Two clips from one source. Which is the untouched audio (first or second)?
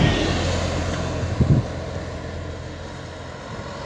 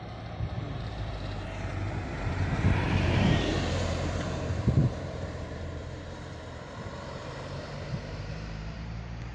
first